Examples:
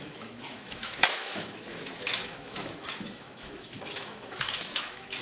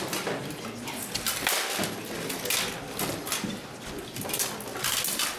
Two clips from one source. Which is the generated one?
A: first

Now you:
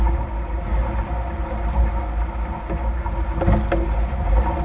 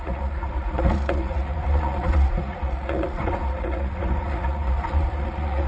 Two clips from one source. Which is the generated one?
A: second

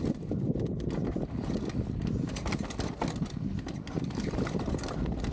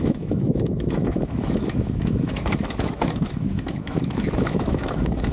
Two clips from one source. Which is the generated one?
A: second